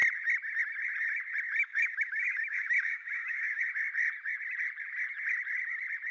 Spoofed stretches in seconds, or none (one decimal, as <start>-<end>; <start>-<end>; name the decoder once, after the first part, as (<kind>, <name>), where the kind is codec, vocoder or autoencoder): 1.6-3.6 (autoencoder, DAC-VAE)